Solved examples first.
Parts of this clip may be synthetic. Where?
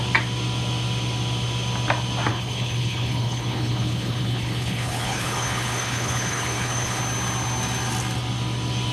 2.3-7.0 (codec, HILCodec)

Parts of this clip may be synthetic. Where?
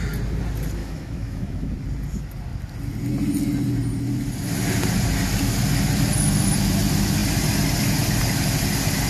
0.8-1.7 (autoencoder, DAC-VAE)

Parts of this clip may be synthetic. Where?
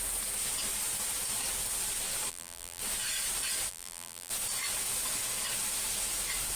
2.3-2.8 (vocoder, BigVGAN v2); 3.7-4.3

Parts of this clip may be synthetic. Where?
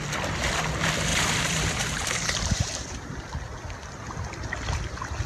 1.1-3.2 (vocoder, BigVGAN v2)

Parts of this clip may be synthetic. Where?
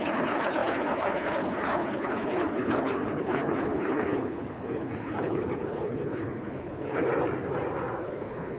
0.0-7.1 (codec, HILCodec); 8.0-8.6